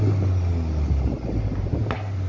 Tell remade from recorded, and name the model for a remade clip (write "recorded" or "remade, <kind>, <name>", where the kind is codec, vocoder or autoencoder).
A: recorded